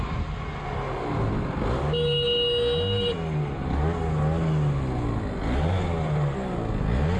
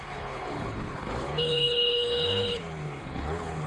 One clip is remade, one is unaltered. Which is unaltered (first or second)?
first